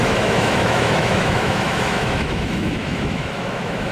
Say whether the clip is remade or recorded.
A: remade